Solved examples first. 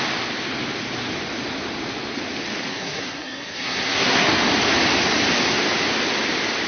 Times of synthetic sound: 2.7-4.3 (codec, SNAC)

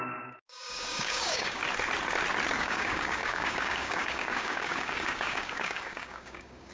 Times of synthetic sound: 0.0-1.6 (codec, DAC); 2.6-6.7